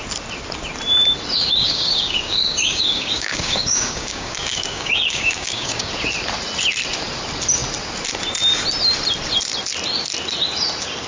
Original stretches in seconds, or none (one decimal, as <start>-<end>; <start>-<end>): 0.0-1.3; 5.9-11.1